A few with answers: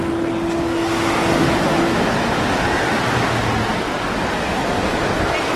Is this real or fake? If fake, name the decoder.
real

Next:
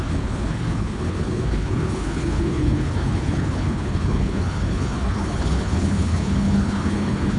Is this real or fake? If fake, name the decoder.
fake, codec, HILCodec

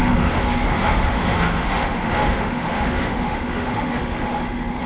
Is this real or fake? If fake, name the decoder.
fake, autoencoder, DAC-VAE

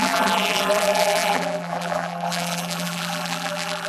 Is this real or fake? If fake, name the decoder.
fake, vocoder, BigVGAN v2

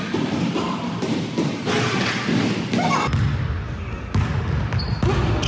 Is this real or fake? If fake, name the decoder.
real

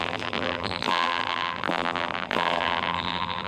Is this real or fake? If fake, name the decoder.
fake, vocoder, BigVGAN v2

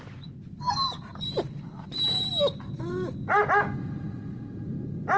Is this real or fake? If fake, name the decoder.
real